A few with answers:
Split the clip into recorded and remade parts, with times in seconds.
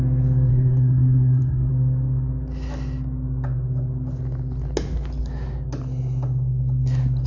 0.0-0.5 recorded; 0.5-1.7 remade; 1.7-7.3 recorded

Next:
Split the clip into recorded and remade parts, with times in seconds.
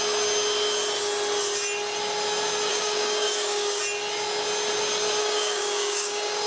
0.0-2.7 recorded; 2.7-3.8 remade; 3.8-5.2 recorded; 5.2-6.5 remade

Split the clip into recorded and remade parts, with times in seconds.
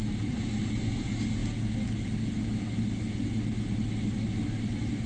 0.0-5.1 recorded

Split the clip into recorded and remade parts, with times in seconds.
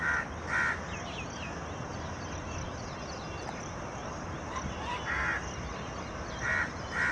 0.0-1.9 recorded; 1.9-2.4 remade; 2.4-4.0 recorded; 4.0-4.8 remade; 4.8-7.1 recorded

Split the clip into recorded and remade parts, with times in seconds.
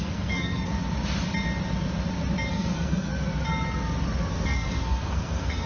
0.0-0.7 remade; 0.7-2.5 recorded; 2.5-3.1 remade; 3.1-4.3 recorded; 4.3-5.7 remade